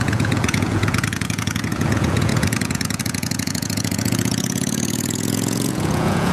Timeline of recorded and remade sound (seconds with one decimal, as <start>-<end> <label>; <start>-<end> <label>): 0.0-6.3 remade